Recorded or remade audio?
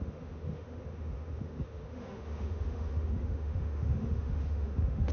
remade